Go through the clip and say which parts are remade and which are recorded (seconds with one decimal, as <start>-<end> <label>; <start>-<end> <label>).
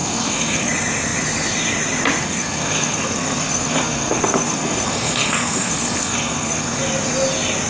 0.0-0.7 remade; 0.7-2.2 recorded; 2.2-6.8 remade; 6.8-7.7 recorded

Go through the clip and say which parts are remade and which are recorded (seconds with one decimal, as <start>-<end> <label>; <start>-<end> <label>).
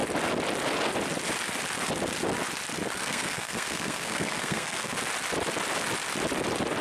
0.0-3.0 recorded; 3.0-5.0 remade; 5.0-6.8 recorded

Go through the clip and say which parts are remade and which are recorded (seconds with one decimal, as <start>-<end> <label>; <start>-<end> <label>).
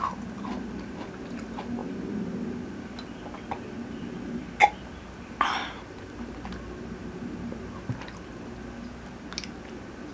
0.0-10.1 recorded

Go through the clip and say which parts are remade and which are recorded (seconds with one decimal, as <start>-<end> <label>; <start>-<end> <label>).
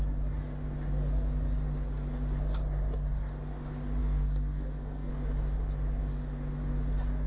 0.0-4.0 recorded; 4.0-5.1 remade; 5.1-7.3 recorded